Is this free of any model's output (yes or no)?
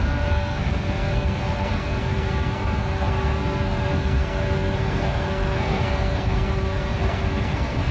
no